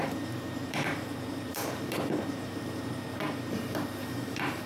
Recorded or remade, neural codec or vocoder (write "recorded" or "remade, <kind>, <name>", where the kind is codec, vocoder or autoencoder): remade, vocoder, BigVGAN v2